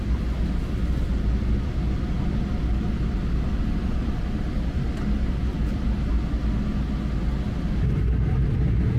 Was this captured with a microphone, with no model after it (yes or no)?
yes